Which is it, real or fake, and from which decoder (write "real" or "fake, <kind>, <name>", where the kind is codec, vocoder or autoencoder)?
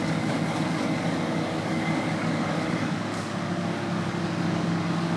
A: fake, codec, DAC